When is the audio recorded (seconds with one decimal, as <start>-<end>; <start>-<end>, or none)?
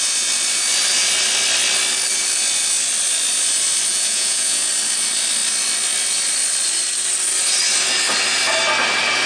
0.0-3.9; 4.7-9.3